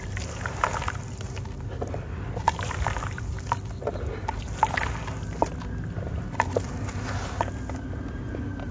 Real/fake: real